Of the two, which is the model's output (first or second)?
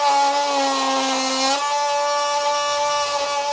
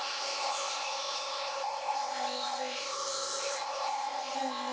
second